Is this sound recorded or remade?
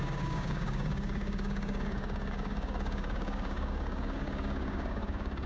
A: remade